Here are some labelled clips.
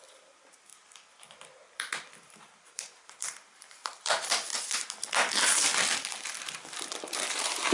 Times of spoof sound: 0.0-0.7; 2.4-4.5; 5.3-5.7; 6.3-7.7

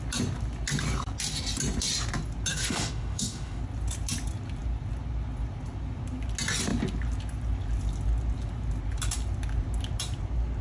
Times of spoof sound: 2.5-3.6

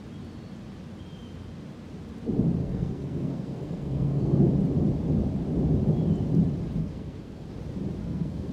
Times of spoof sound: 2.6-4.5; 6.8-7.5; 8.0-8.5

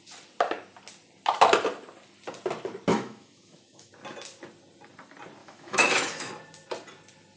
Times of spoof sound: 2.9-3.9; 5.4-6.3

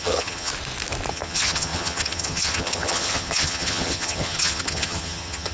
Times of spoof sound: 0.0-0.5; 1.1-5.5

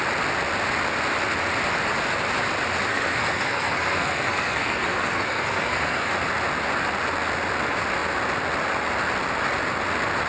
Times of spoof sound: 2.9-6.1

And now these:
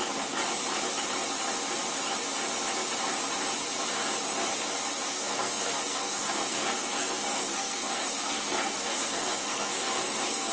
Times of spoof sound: 5.1-10.5

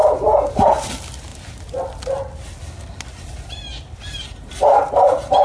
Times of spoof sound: none